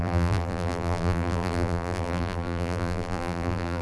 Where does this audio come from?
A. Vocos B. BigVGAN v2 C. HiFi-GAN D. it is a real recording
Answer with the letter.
B